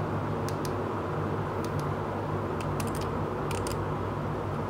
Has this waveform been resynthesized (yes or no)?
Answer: no